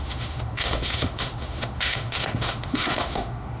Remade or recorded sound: remade